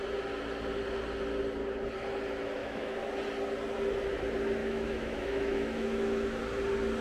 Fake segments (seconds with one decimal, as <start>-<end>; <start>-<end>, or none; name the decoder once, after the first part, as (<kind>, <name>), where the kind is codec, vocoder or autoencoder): 2.6-3.1 (autoencoder, DAC-VAE); 4.6-6.4